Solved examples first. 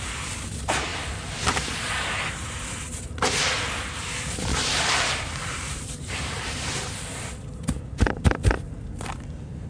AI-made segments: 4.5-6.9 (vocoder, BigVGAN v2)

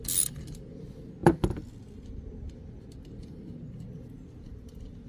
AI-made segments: none

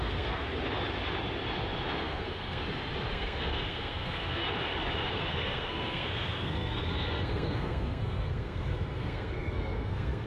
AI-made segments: 0.0-0.4 (codec, SNAC); 2.0-2.6; 3.1-4.4; 5.1-10.3

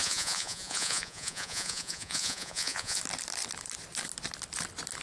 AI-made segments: 0.0-3.0 (vocoder, Vocos)